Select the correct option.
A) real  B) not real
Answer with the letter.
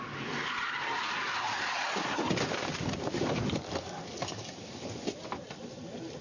A